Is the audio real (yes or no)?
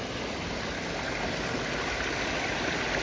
yes